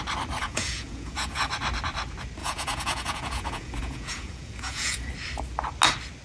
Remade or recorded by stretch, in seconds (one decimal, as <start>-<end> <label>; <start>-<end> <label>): 0.0-0.4 recorded; 0.4-1.5 remade; 1.5-2.4 recorded; 2.4-5.1 remade; 5.1-6.2 recorded